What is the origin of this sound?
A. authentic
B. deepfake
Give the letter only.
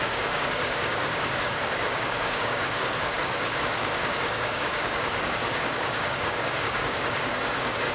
B